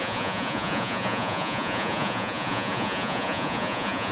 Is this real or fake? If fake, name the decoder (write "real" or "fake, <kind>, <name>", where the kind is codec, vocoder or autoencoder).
fake, vocoder, Vocos